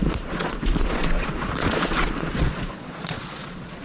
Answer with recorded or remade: remade